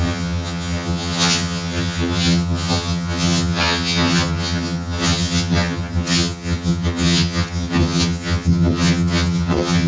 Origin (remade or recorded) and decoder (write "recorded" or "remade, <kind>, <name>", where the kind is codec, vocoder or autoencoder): remade, vocoder, HiFi-GAN